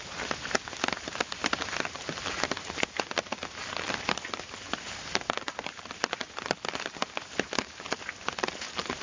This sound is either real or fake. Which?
real